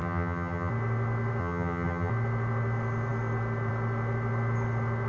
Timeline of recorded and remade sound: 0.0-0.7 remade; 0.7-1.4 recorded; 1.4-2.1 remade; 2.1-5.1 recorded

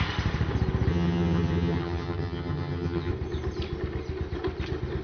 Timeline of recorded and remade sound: 0.0-0.9 recorded; 0.9-3.1 remade; 3.1-5.0 recorded

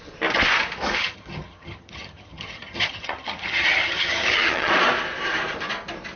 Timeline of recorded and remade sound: 0.0-1.0 recorded; 1.0-4.7 remade; 4.7-6.2 recorded

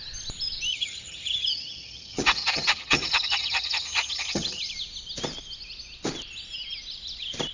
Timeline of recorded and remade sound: 0.0-0.7 recorded; 0.7-4.6 remade; 4.6-7.5 recorded